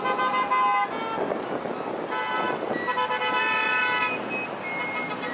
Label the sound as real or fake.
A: real